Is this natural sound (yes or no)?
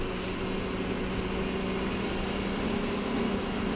yes